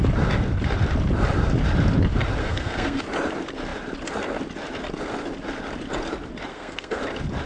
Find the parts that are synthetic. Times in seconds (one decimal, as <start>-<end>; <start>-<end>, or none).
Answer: 2.4-3.0; 6.5-7.0